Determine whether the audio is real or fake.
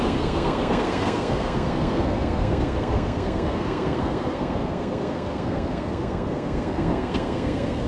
fake